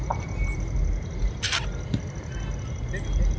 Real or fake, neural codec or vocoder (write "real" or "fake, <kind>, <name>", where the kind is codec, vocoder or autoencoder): real